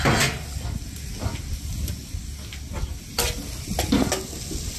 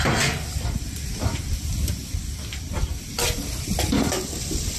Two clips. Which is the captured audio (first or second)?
first